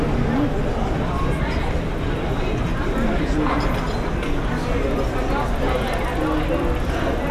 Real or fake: real